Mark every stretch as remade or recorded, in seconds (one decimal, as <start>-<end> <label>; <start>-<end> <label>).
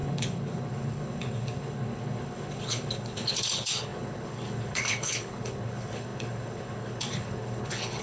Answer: 0.0-8.0 remade